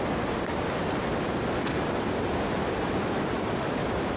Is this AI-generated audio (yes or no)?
no